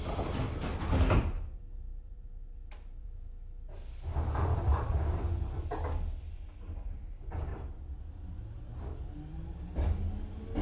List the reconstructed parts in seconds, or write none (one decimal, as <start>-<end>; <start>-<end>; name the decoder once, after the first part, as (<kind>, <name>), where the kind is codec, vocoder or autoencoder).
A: 1.9-3.3 (vocoder, BigVGAN v2); 4.7-5.4; 7.5-8.0